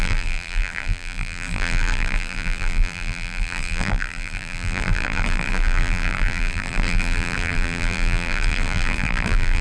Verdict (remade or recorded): remade